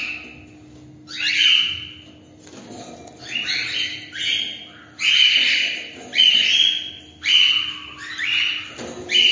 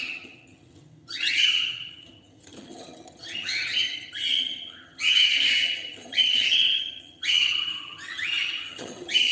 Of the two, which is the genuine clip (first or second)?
first